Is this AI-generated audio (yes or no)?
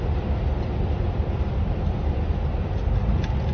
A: no